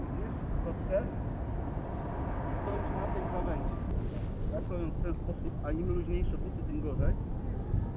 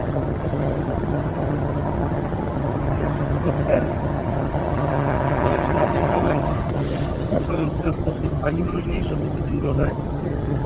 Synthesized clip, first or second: second